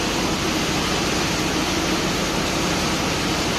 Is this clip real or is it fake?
real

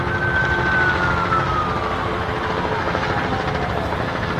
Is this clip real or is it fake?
real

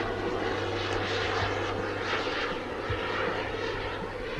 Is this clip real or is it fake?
real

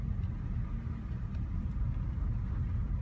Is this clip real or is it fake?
real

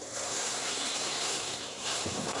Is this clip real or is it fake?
fake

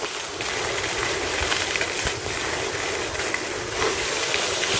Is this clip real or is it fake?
real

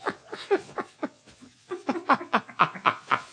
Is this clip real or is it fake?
fake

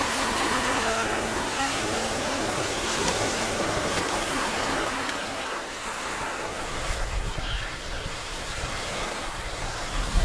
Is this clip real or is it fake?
fake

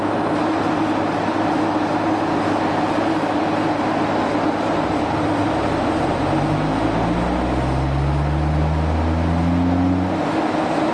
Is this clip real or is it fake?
real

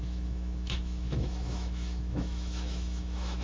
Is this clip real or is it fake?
fake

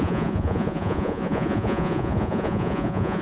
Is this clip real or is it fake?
fake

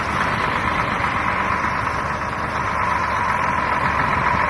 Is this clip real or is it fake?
real